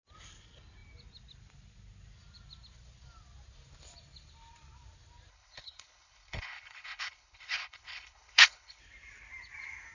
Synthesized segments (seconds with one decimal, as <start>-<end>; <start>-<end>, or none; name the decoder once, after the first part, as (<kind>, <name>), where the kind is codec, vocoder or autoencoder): 5.3-8.8 (codec, HILCodec)

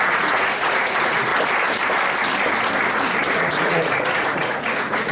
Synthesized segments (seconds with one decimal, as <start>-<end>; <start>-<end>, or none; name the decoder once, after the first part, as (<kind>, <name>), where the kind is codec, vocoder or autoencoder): 0.0-1.3 (vocoder, Vocos); 3.3-5.1